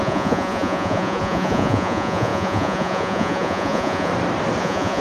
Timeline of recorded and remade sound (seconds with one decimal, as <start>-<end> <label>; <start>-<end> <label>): 0.0-4.1 remade; 4.1-4.6 recorded; 4.6-5.0 remade